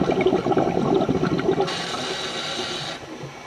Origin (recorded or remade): recorded